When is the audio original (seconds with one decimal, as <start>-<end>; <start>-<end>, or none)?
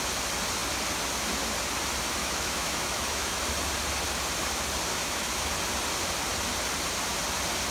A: 0.0-2.2; 3.4-4.9; 5.5-7.7